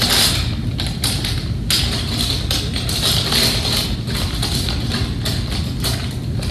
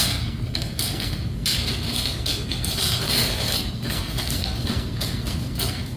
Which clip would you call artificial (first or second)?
second